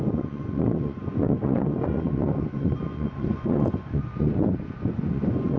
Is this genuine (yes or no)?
no